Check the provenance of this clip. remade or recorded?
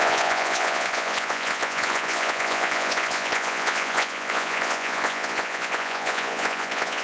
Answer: remade